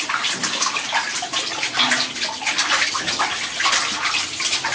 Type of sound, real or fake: fake